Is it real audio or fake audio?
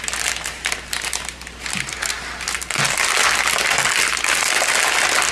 real